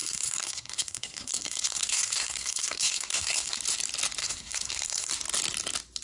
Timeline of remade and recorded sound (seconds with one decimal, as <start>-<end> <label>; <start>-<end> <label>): 0.0-3.6 remade; 3.6-4.2 recorded; 4.2-5.1 remade; 5.1-6.0 recorded